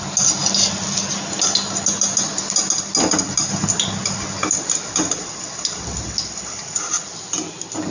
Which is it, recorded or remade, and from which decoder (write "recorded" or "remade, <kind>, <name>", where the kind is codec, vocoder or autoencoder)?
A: recorded